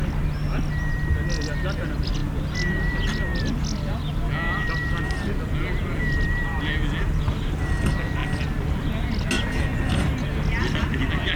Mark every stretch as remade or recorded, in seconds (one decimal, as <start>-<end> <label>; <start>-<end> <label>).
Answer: 0.0-11.4 recorded